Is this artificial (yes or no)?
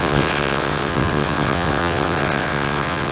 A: yes